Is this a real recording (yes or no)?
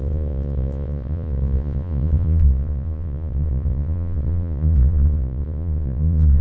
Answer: no